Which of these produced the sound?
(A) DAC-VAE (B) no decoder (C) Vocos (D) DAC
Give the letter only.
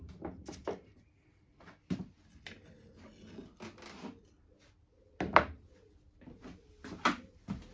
B